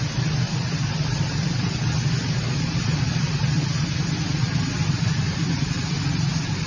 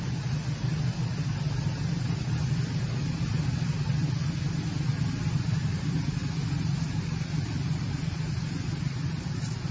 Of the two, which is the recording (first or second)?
second